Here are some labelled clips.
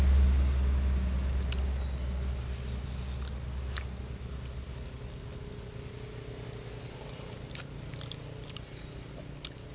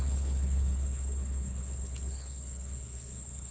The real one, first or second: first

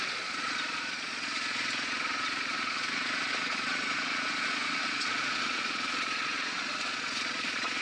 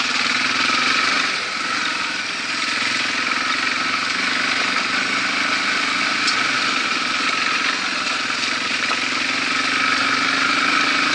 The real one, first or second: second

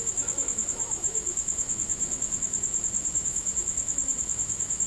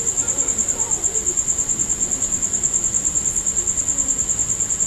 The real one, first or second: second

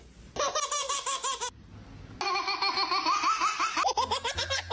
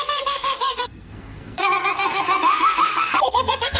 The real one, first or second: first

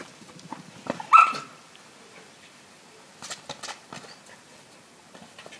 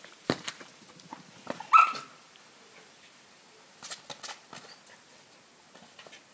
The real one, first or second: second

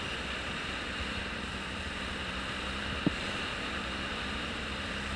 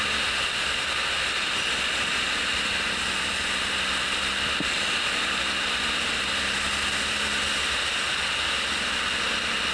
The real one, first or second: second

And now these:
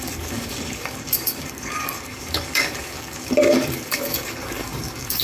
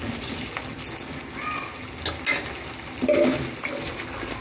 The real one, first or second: second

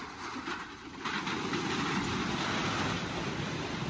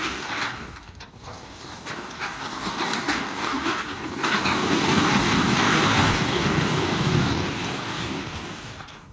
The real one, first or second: first